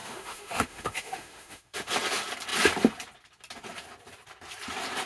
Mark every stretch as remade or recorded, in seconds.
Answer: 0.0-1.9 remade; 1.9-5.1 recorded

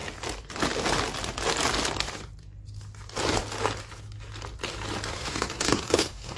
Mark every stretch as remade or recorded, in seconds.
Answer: 0.0-5.1 recorded; 5.1-6.4 remade

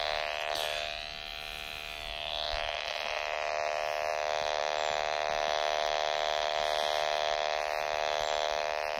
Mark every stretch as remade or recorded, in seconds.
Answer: 0.0-9.0 recorded

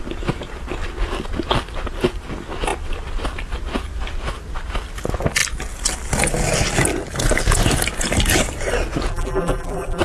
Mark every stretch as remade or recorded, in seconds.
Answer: 0.0-9.1 recorded; 9.1-10.0 remade